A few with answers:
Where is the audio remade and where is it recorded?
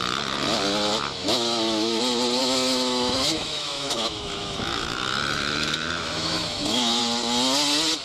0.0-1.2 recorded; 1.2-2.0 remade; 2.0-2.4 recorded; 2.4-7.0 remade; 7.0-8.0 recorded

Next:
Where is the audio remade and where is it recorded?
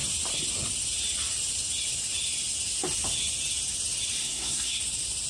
0.0-4.2 recorded; 4.2-4.8 remade; 4.8-5.3 recorded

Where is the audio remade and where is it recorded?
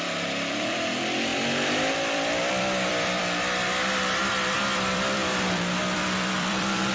0.0-3.2 remade; 3.2-4.3 recorded; 4.3-6.9 remade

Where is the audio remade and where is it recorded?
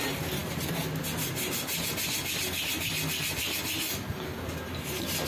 0.0-5.3 recorded